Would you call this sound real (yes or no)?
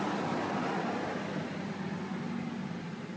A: yes